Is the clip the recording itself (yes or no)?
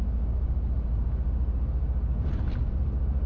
yes